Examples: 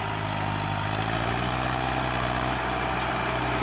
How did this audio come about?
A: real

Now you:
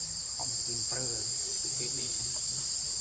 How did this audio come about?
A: fake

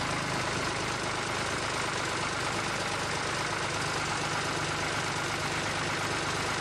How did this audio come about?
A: real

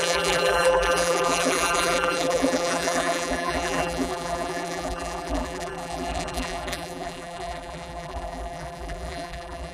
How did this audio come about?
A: fake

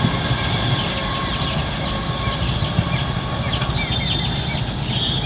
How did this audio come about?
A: real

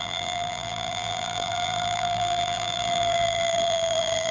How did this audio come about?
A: fake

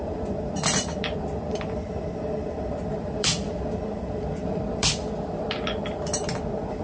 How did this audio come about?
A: fake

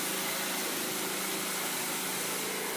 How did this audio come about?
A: real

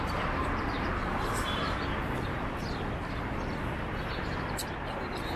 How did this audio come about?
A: fake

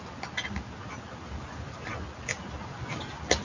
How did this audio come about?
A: real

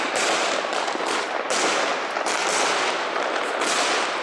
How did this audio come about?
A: real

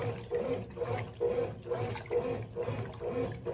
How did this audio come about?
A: real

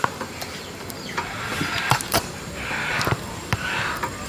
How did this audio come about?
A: fake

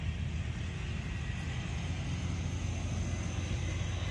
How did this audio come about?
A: real